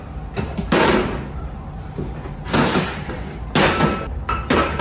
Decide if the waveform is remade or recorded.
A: recorded